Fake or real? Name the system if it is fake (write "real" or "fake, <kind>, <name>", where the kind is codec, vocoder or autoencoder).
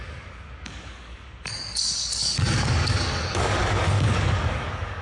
fake, codec, DAC